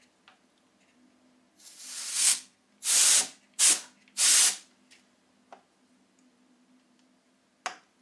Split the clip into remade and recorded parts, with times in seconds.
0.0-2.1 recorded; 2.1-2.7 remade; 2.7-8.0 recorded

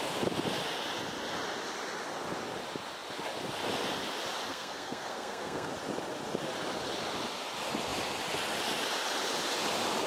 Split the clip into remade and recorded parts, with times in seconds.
0.0-4.5 recorded; 4.5-5.7 remade; 5.7-10.1 recorded

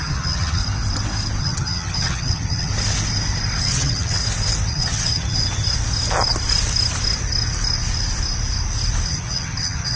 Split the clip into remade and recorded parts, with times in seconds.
0.0-0.6 remade; 0.6-1.4 recorded; 1.4-2.7 remade; 2.7-3.6 recorded; 3.6-4.2 remade; 4.2-4.7 recorded; 4.7-5.4 remade; 5.4-9.1 recorded; 9.1-10.0 remade

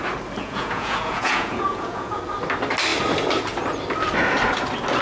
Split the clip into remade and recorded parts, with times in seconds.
0.0-0.4 recorded; 0.4-2.2 remade; 2.2-5.0 recorded

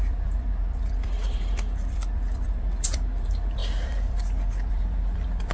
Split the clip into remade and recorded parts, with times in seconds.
0.0-5.5 remade